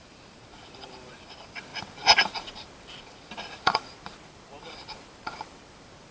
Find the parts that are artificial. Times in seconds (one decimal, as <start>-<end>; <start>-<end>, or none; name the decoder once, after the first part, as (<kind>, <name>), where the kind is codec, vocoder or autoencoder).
0.0-6.1 (vocoder, BigVGAN v2)